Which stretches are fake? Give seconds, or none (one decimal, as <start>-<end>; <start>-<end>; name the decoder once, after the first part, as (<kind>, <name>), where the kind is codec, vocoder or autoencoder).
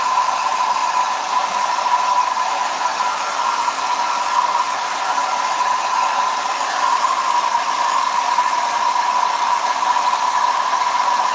0.0-11.3 (vocoder, BigVGAN v2)